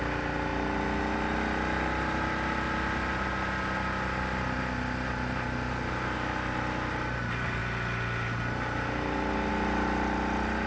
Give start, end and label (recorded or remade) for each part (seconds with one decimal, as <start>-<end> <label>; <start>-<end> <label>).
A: 0.0-10.7 recorded